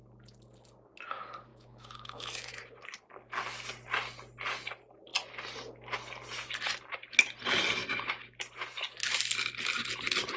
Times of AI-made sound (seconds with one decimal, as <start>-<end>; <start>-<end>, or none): 1.5-2.6